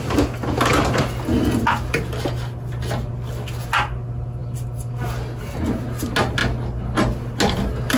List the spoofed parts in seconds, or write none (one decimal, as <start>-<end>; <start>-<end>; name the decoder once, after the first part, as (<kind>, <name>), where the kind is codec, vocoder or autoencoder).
none